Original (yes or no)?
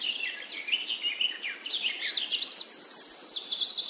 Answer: yes